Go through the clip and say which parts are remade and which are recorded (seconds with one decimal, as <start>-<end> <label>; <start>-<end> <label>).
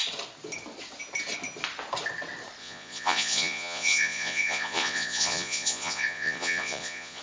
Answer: 0.0-2.6 recorded; 2.6-7.2 remade